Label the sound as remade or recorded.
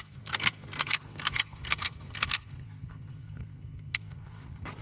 remade